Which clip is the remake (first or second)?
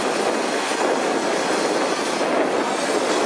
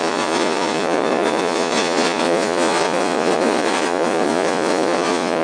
second